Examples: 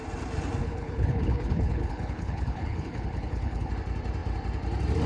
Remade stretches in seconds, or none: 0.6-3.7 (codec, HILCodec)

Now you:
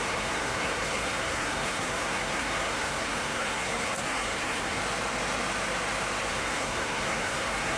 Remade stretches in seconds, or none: 0.0-4.8 (codec, SNAC); 6.3-7.8